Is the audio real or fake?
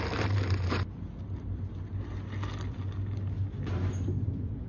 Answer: real